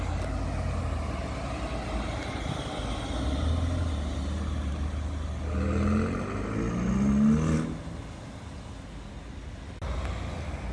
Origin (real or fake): real